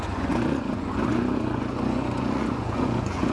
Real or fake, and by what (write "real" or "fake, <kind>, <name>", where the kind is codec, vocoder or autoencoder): fake, vocoder, Vocos